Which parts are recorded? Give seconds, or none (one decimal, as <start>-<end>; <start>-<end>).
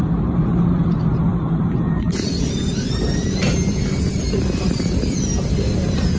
0.0-6.2